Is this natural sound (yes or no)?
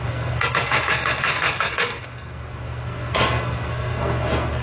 no